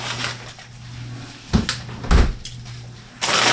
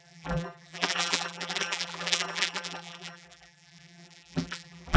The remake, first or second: second